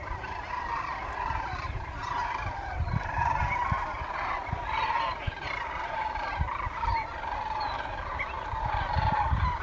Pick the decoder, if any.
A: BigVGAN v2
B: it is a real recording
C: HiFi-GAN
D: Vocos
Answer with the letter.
B